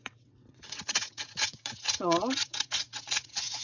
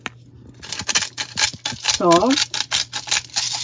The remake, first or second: first